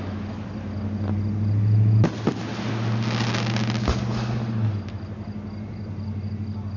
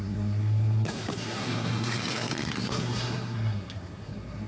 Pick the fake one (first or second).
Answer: second